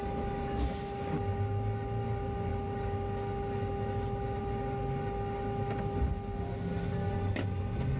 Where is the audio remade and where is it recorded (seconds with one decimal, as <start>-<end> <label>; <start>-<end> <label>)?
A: 0.0-8.0 recorded